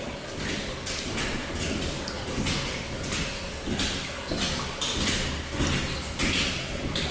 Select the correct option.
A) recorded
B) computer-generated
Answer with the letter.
A